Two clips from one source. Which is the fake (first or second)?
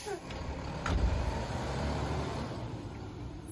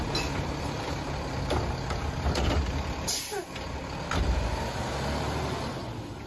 first